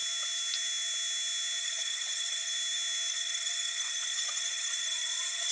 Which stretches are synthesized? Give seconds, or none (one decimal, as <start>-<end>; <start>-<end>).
1.6-2.5; 3.1-5.5